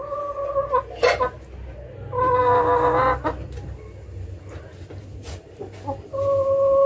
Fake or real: real